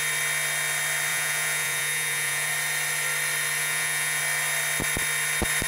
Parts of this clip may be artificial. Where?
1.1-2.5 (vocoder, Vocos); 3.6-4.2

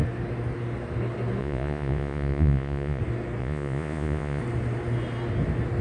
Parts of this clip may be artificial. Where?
1.4-3.0 (vocoder, Vocos); 3.4-4.4

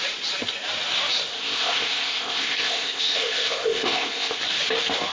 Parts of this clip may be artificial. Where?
1.3-4.4 (codec, ZipCodec)

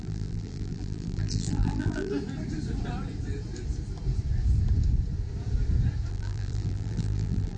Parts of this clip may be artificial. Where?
0.0-2.1 (vocoder, BigVGAN v2); 6.1-7.6

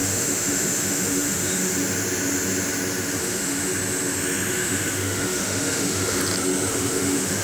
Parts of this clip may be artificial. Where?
0.0-1.7 (autoencoder, DAC-VAE); 3.2-3.7; 4.5-6.2; 6.7-7.4

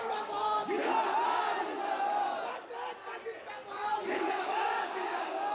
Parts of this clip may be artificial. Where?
0.0-0.8 (codec, DAC); 4.1-5.5